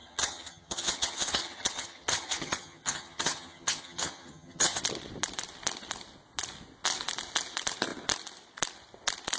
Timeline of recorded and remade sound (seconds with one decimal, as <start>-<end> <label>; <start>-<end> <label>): 0.0-4.8 remade; 4.8-9.4 recorded